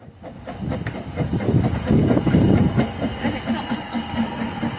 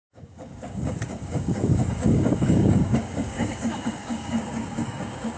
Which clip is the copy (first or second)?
second